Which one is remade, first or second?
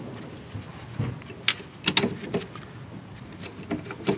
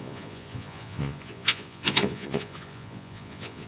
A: second